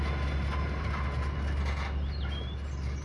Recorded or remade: recorded